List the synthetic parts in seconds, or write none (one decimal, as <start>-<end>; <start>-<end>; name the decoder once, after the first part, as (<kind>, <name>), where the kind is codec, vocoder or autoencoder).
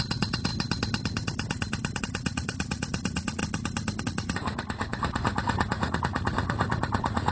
0.0-0.5 (vocoder, Vocos); 2.0-3.4; 4.0-7.3